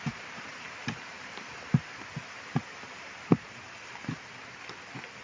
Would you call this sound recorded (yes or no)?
yes